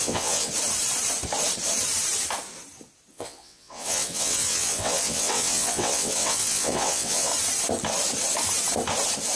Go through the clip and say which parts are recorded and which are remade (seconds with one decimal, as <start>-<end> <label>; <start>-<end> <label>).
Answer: 0.0-0.5 remade; 0.5-3.1 recorded; 3.1-7.3 remade; 7.3-9.4 recorded